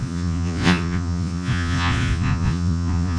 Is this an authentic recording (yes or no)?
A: no